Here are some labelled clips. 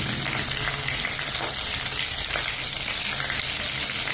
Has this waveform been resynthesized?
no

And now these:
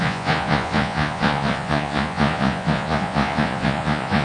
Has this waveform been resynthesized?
yes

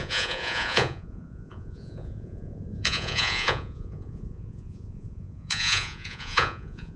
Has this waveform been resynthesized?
yes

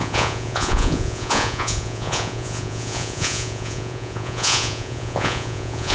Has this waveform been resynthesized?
yes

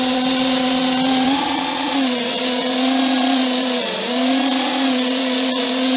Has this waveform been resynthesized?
yes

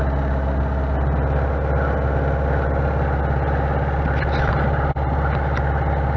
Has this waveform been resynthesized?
no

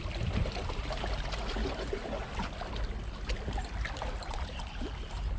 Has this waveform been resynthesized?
no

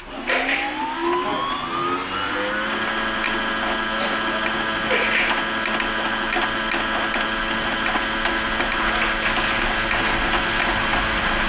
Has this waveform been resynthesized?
no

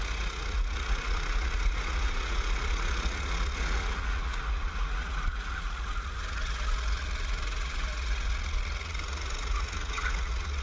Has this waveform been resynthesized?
yes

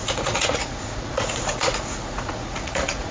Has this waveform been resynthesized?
yes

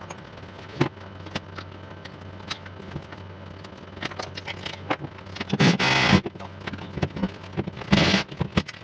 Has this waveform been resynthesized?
no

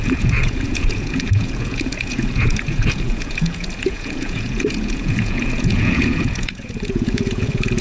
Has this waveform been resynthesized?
yes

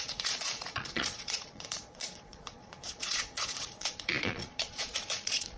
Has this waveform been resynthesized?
yes